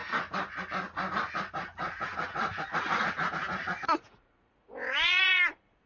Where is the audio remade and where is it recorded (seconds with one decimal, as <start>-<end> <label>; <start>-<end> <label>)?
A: 0.0-1.5 recorded; 1.5-5.9 remade